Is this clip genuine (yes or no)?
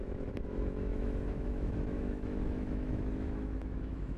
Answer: no